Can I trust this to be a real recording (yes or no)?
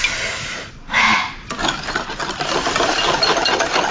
yes